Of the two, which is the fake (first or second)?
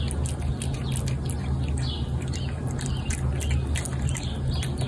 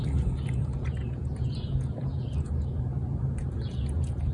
second